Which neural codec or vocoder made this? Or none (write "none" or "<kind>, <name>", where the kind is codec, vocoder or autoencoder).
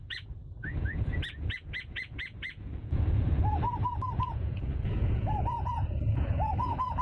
vocoder, Vocos